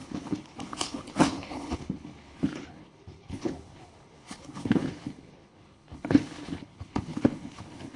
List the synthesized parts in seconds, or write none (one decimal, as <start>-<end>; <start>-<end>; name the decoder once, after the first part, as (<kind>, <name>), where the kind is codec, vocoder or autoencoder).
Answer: 0.0-8.0 (codec, HILCodec)